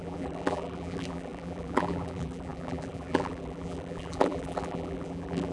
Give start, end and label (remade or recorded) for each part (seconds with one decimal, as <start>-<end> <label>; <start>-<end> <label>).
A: 0.0-5.5 remade